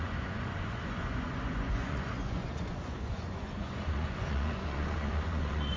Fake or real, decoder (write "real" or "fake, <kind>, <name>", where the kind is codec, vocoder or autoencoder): fake, vocoder, Vocos